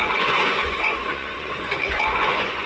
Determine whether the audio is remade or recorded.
remade